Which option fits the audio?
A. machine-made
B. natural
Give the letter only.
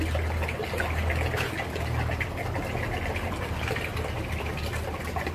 B